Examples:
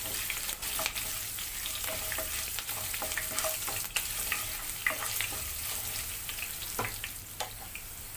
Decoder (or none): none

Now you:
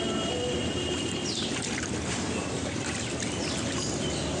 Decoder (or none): none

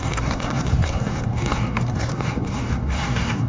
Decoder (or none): codec, SNAC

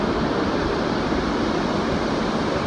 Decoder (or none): none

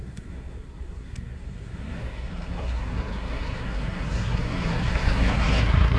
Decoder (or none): codec, SNAC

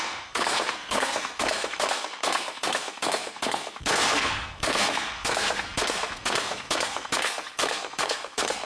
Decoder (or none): codec, SNAC